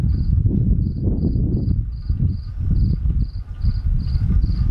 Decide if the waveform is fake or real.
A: real